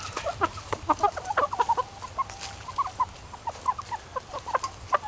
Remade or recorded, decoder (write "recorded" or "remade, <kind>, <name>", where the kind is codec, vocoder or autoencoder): recorded